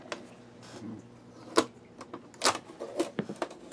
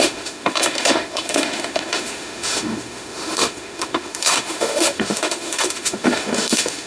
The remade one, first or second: second